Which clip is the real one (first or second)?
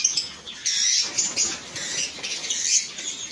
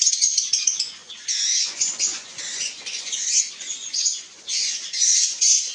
first